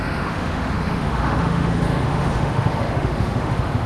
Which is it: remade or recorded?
remade